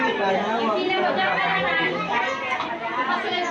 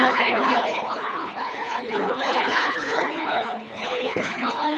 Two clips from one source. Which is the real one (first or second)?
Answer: first